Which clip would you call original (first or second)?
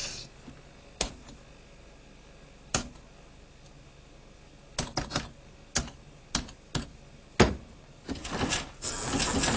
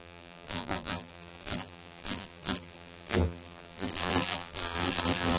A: first